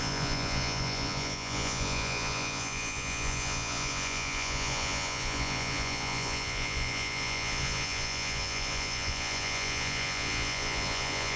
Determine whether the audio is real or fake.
fake